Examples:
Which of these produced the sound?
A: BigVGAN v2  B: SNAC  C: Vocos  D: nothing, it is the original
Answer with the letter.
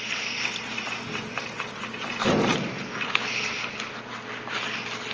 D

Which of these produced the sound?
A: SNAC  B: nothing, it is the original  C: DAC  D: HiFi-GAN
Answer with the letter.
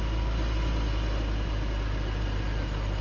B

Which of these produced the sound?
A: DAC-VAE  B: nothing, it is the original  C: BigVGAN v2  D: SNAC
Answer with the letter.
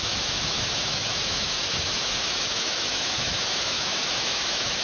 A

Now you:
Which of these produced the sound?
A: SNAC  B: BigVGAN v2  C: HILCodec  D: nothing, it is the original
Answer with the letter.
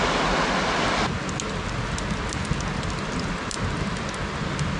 D